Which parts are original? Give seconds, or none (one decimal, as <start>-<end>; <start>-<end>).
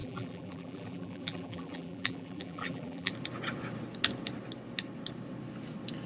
3.1-6.1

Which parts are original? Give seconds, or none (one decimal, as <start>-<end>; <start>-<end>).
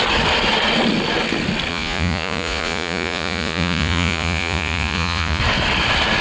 0.0-1.7; 5.4-6.2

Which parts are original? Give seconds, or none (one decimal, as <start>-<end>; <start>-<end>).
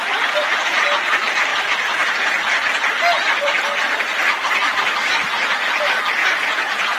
0.0-6.2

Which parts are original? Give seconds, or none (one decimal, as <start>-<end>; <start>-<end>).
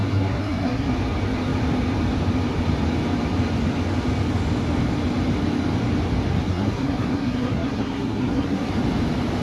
0.9-6.4; 8.7-9.4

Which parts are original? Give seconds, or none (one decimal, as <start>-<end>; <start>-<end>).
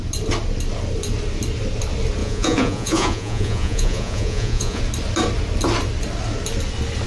0.0-2.2; 4.8-7.1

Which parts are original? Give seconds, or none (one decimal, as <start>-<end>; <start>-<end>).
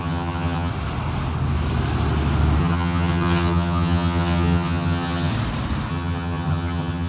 0.7-2.6; 5.3-5.9